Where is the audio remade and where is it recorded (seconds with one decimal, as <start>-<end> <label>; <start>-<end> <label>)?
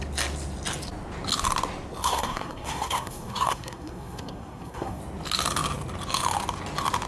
0.0-2.0 recorded; 2.0-5.0 remade; 5.0-7.1 recorded